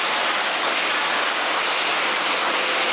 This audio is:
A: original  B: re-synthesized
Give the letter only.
A